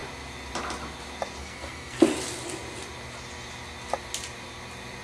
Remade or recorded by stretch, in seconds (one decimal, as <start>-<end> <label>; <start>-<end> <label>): 0.0-1.4 recorded; 1.4-2.0 remade; 2.0-5.0 recorded